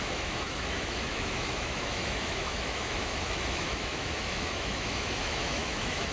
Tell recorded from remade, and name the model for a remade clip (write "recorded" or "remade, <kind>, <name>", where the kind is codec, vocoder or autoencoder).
remade, autoencoder, DAC-VAE